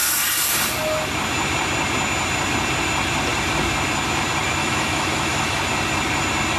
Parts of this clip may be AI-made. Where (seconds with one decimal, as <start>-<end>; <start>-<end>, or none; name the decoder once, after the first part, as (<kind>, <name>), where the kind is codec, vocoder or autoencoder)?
4.6-5.6 (autoencoder, DAC-VAE)